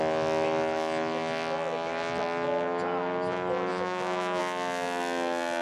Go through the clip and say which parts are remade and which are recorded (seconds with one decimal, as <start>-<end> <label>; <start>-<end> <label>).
0.0-3.7 recorded; 3.7-4.4 remade; 4.4-5.6 recorded